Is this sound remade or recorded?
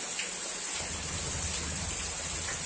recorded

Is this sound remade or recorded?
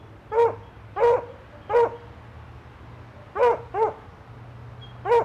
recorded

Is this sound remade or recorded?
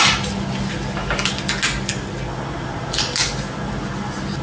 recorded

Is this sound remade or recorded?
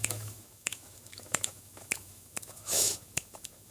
remade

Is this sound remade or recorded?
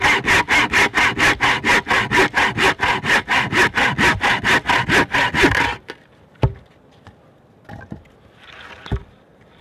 recorded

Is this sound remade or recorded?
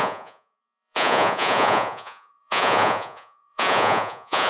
remade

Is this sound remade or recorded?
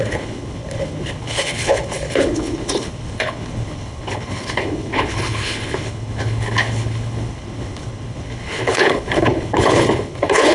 remade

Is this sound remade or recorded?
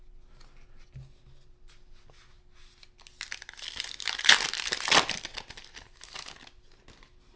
recorded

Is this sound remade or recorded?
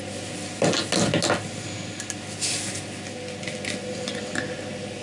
recorded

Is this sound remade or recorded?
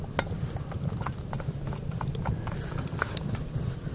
recorded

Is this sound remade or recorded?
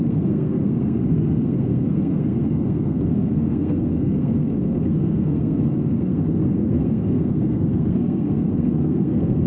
remade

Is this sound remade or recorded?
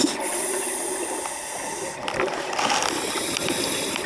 recorded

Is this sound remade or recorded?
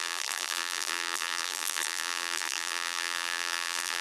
remade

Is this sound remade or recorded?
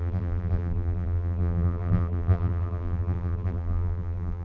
remade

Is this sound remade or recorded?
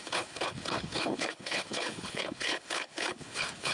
remade